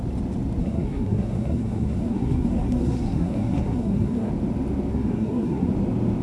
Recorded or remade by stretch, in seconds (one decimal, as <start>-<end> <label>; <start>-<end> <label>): 0.0-0.6 recorded; 0.6-4.3 remade; 4.3-4.9 recorded; 4.9-5.7 remade; 5.7-6.2 recorded